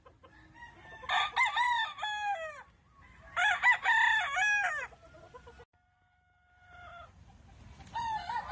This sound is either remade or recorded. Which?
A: recorded